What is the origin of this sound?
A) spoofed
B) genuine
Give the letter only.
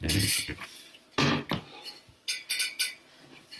B